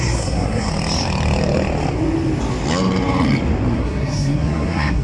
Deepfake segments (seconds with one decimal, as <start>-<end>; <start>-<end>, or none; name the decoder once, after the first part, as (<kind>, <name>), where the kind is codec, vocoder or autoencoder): 0.0-0.7 (codec, SNAC); 3.7-5.0